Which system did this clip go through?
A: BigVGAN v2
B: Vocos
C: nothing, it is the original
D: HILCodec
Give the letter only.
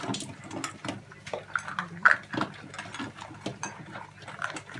C